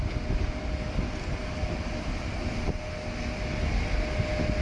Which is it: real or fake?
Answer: real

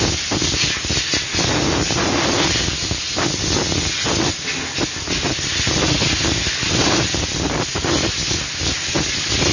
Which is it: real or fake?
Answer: real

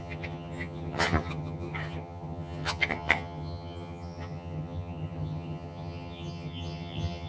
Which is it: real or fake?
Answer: fake